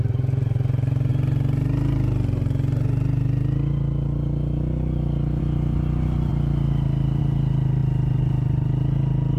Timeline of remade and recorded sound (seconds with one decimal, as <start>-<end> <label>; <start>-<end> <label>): 0.0-9.4 recorded